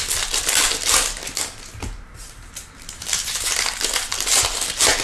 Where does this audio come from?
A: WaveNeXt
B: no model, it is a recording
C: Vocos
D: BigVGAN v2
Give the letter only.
B